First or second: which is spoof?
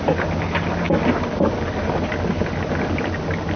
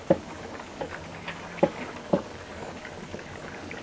second